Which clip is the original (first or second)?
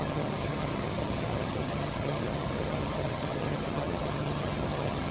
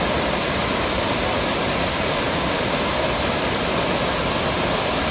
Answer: second